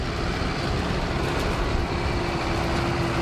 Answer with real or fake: real